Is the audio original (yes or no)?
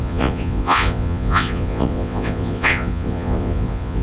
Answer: no